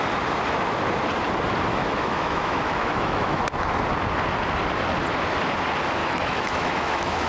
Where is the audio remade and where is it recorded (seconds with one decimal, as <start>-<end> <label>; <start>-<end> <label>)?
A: 0.0-1.7 recorded; 1.7-3.4 remade; 3.4-6.0 recorded; 6.0-7.3 remade